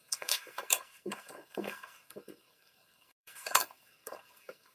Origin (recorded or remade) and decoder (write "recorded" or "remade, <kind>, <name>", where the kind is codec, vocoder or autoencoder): remade, codec, SNAC